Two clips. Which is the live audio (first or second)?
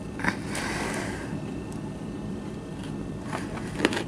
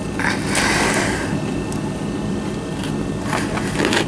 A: second